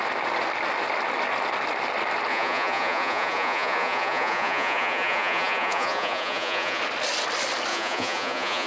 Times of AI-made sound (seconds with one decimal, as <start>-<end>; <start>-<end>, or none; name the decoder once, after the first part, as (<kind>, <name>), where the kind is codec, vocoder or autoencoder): 2.3-6.8 (vocoder, Vocos); 7.7-8.7